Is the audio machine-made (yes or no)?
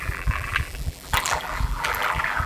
yes